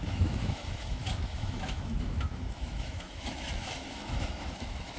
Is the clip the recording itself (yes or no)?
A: no